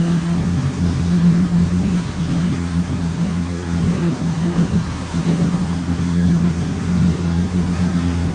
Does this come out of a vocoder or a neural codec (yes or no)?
yes